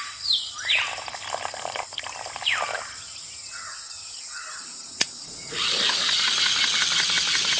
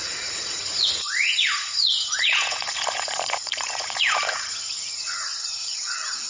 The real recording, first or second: first